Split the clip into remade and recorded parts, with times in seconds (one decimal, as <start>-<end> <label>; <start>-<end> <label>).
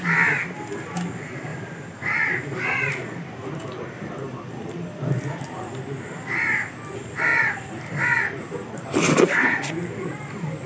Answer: 0.0-9.1 recorded; 9.1-9.7 remade; 9.7-10.7 recorded